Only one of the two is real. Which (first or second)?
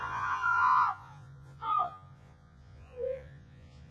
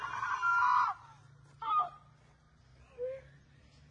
second